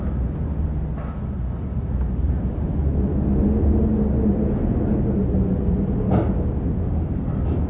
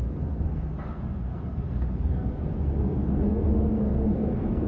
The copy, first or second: second